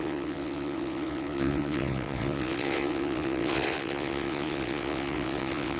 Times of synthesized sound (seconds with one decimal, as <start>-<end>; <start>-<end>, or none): 0.0-5.8